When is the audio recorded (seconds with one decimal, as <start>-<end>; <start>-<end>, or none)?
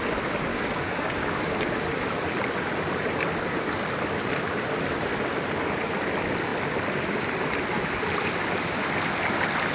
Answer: 0.0-0.5; 1.4-9.7